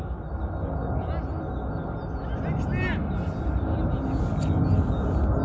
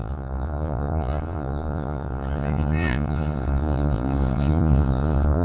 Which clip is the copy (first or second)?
second